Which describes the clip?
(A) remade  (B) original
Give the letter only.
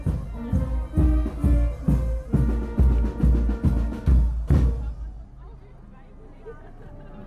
B